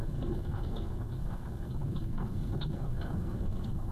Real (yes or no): no